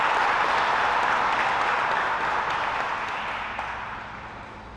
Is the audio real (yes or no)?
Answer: yes